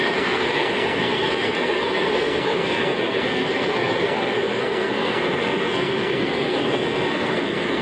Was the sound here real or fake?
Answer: fake